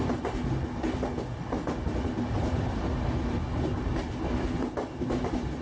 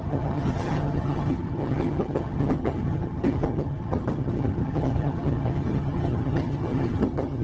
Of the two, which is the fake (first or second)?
second